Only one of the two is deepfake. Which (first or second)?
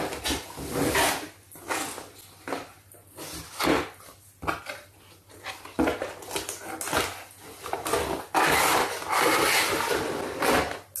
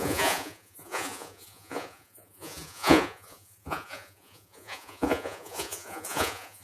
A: second